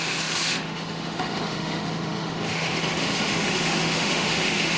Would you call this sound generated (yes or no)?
yes